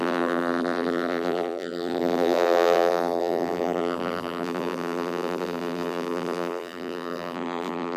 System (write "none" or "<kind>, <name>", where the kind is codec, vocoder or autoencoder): vocoder, BigVGAN v2